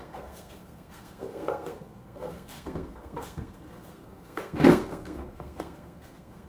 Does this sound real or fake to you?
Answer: fake